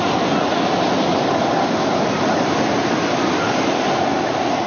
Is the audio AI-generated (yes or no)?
no